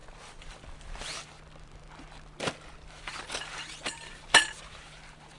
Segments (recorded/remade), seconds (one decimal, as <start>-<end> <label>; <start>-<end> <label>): 0.0-5.4 recorded